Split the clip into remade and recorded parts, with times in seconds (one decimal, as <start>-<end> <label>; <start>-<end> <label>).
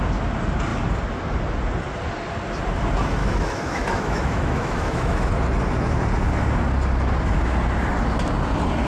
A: 0.0-3.2 recorded; 3.2-5.3 remade; 5.3-8.9 recorded